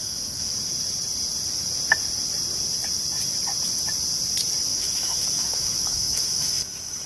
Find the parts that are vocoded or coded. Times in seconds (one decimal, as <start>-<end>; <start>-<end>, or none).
0.0-0.5; 4.7-7.1